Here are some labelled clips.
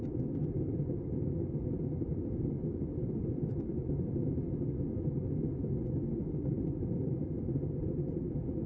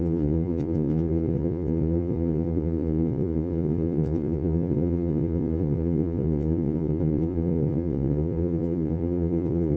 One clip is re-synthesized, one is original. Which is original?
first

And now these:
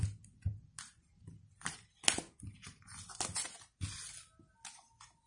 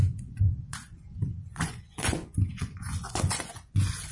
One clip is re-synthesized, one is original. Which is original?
first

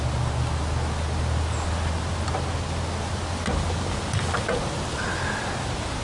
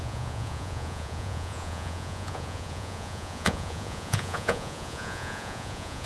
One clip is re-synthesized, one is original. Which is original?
first